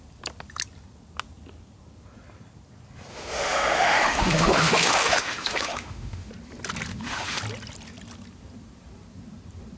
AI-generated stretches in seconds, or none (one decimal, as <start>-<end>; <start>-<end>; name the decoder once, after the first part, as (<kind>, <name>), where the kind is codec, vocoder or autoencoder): 3.1-6.3 (autoencoder, DAC-VAE); 6.9-7.4